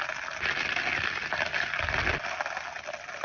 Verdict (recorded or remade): recorded